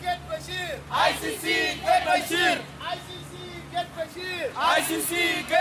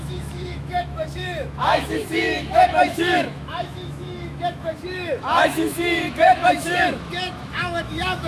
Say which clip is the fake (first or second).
second